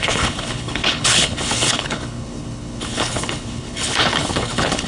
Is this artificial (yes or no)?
yes